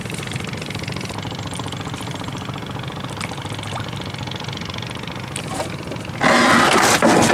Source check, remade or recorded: recorded